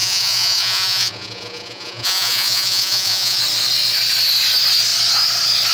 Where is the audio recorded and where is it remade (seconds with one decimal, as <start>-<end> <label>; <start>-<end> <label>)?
0.0-3.4 remade; 3.4-5.7 recorded